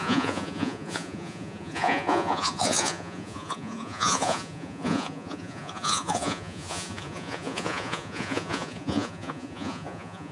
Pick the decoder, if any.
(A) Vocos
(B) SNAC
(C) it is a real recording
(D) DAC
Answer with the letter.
A